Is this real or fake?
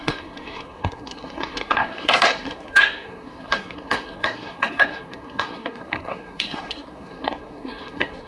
fake